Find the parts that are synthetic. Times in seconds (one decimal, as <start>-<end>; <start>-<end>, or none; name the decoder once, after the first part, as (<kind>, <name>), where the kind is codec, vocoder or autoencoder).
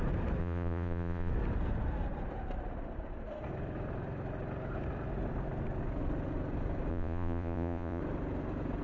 0.4-1.3 (vocoder, Vocos); 6.9-8.0